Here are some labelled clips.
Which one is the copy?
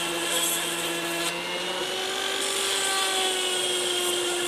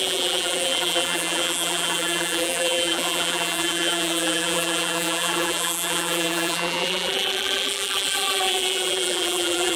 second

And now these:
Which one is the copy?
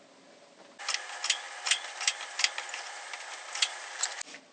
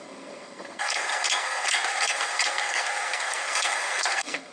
second